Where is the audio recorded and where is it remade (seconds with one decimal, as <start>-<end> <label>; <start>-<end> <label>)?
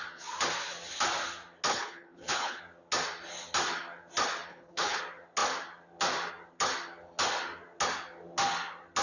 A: 0.0-1.7 recorded; 1.7-2.6 remade; 2.6-4.5 recorded; 4.5-5.0 remade; 5.0-9.0 recorded